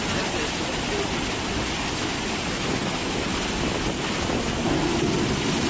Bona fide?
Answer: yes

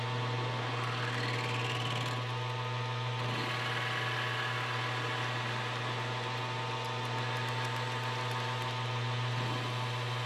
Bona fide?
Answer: yes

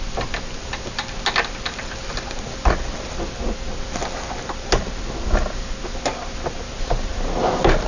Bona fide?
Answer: yes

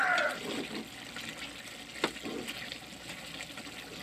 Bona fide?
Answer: yes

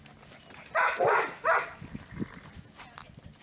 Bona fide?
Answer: yes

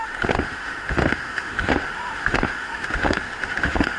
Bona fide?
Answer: no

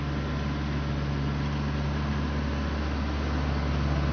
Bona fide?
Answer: yes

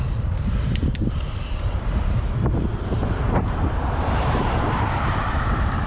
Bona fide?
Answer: no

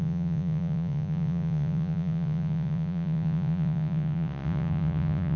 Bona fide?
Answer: no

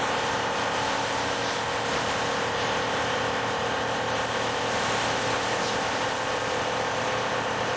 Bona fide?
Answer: yes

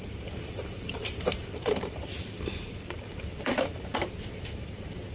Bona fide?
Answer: no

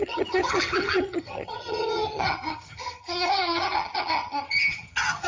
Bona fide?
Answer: no